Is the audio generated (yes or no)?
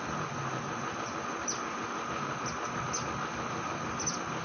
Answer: no